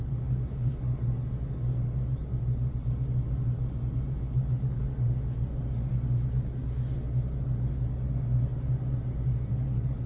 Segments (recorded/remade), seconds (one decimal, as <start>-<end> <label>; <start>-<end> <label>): 0.0-0.7 remade; 0.7-4.2 recorded; 4.2-4.8 remade; 4.8-9.5 recorded; 9.5-10.1 remade